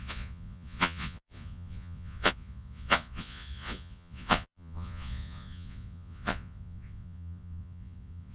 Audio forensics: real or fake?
fake